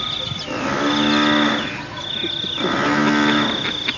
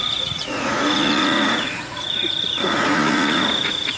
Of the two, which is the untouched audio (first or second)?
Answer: first